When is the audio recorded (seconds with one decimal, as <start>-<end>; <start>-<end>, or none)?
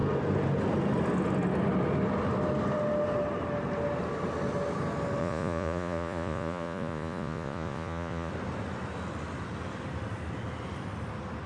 0.0-5.2; 8.3-11.5